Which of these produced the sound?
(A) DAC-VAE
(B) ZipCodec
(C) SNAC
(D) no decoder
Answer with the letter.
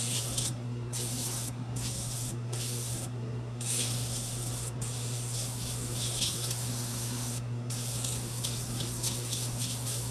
C